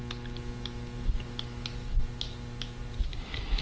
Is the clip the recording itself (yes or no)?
yes